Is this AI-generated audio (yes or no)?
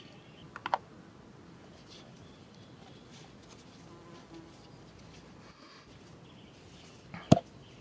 no